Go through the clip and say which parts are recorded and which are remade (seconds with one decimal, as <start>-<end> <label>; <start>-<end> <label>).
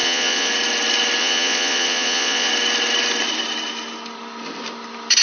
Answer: 0.0-0.5 remade; 0.5-1.2 recorded; 1.2-2.5 remade; 2.5-5.2 recorded